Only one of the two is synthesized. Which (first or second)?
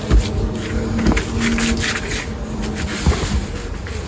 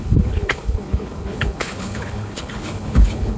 second